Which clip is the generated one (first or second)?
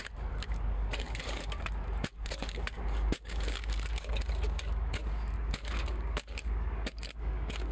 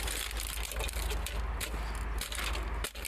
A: first